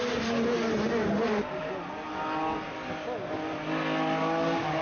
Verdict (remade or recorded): recorded